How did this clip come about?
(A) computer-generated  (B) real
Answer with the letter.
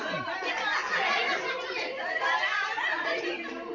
B